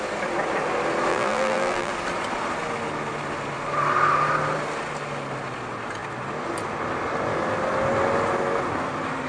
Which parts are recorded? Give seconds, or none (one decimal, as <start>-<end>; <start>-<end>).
0.0-1.1; 1.9-9.3